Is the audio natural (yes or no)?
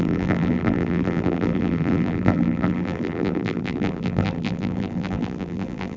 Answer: no